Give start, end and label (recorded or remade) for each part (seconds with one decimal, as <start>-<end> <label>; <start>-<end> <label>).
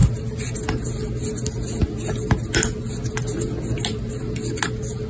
0.0-5.1 recorded